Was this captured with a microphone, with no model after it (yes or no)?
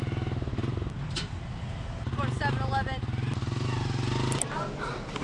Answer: yes